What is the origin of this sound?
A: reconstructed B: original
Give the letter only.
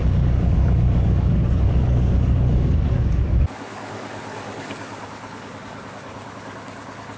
A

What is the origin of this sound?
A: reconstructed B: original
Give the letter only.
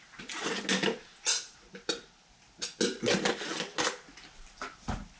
B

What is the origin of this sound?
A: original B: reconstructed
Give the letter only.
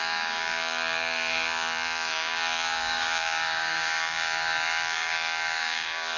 B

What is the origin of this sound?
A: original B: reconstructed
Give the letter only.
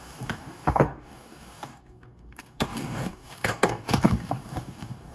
B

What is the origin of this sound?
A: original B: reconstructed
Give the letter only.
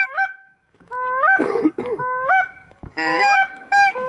B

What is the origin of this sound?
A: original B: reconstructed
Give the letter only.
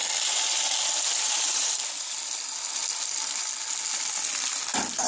A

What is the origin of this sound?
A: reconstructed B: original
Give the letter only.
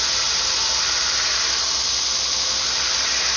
B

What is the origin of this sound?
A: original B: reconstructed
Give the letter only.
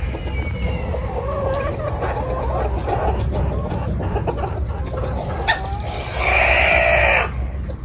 A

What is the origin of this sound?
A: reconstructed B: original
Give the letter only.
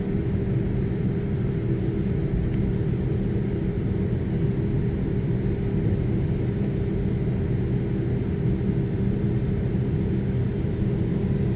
B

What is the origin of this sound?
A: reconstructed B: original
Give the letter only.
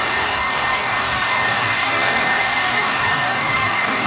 A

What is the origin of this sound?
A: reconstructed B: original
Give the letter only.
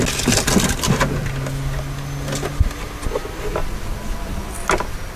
B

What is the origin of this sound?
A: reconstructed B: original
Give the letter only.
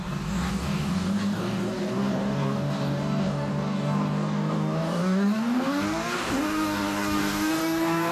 A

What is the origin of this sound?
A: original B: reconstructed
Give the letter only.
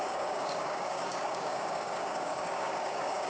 B